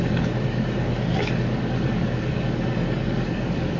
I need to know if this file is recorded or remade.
remade